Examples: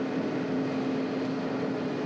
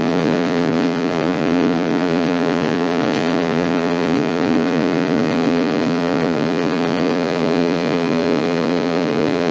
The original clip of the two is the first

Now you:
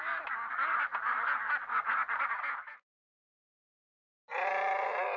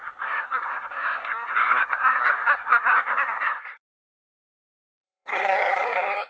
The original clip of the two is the first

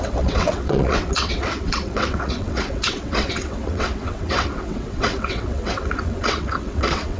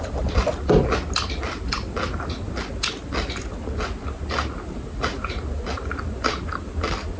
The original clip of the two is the second